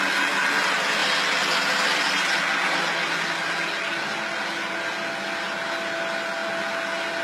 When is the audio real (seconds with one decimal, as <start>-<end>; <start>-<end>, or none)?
0.0-7.2